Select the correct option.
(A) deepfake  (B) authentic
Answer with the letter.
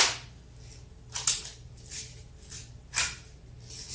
B